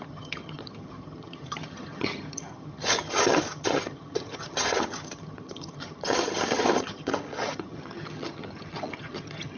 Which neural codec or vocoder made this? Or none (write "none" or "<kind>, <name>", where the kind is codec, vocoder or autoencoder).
vocoder, HiFi-GAN